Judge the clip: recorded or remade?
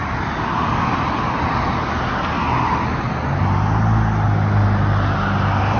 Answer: recorded